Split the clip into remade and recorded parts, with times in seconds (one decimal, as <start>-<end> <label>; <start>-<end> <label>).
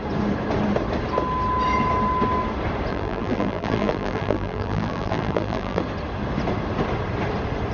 0.0-2.9 recorded; 2.9-5.8 remade; 5.8-7.7 recorded